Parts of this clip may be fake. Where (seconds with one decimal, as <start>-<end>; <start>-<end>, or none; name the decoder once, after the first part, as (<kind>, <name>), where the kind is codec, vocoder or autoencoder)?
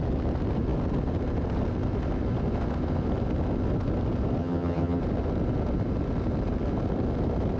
4.4-5.0 (vocoder, HiFi-GAN)